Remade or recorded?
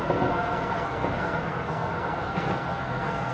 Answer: remade